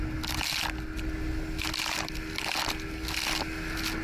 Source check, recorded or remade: recorded